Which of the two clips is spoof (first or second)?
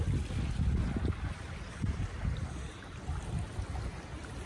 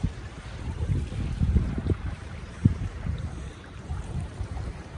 second